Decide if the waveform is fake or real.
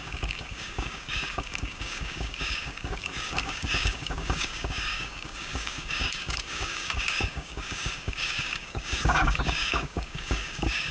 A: fake